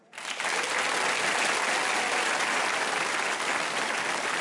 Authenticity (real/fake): real